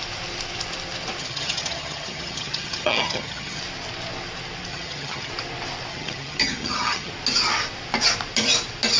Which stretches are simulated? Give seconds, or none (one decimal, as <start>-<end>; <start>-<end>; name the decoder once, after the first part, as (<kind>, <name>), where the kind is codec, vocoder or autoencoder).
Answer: 1.2-3.6 (vocoder, HiFi-GAN); 4.7-5.3; 5.9-7.1